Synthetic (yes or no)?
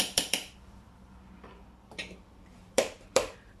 yes